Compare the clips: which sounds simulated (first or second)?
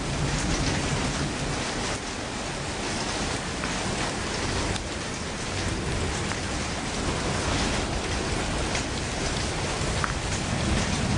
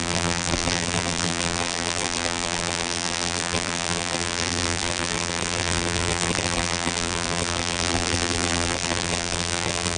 second